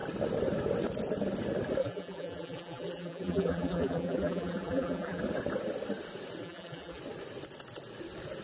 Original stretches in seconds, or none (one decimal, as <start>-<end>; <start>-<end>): 0.0-1.8; 5.2-6.4; 7.0-8.4